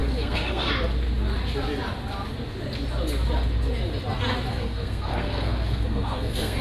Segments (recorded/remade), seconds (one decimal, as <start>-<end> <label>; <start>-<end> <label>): 0.0-0.7 remade; 0.7-4.5 recorded; 4.5-6.6 remade